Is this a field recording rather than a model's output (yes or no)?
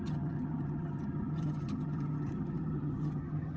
no